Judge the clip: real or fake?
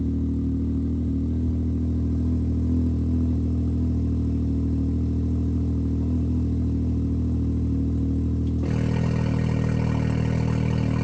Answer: real